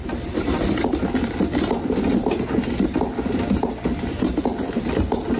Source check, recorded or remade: recorded